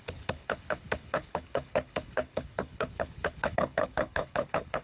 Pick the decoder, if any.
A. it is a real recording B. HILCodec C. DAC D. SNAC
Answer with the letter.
B